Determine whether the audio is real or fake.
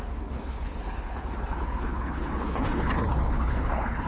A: fake